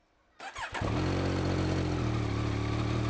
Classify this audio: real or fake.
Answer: real